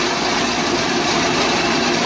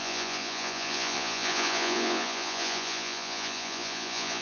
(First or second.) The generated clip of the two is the second